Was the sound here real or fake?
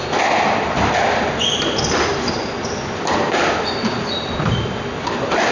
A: real